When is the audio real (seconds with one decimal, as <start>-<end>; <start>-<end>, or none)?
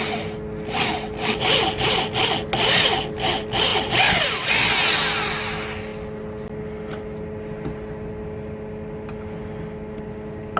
0.0-10.6